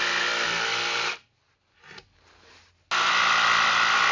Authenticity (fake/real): real